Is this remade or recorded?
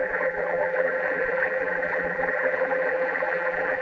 remade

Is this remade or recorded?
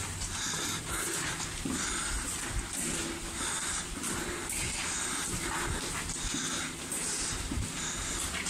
recorded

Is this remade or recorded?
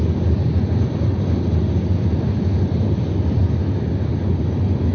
recorded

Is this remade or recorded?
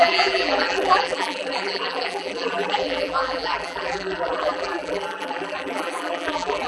remade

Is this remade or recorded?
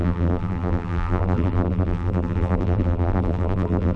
remade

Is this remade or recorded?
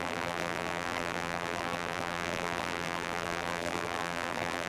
remade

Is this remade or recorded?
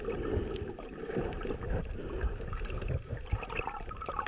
remade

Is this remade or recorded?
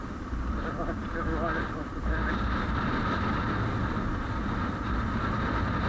recorded